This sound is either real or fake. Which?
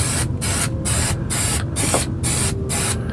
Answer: real